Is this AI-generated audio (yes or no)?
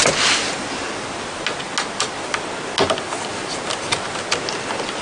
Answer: no